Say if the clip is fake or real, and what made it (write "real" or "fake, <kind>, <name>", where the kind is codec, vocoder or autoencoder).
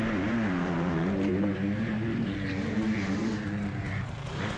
fake, vocoder, BigVGAN v2